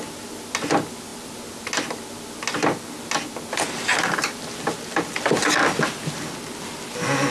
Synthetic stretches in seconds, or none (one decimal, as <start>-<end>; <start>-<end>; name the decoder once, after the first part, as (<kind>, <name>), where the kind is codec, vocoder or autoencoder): none